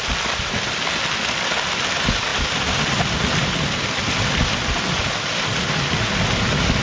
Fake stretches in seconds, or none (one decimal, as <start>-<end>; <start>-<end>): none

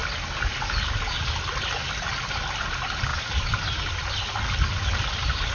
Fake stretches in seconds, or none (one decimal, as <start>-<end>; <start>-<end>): none

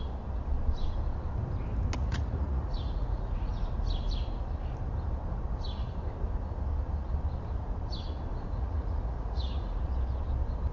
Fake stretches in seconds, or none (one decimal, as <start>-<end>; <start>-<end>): 2.0-3.7; 8.3-9.8

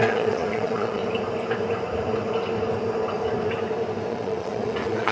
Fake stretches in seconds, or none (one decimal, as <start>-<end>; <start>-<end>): 0.0-1.0; 4.1-5.1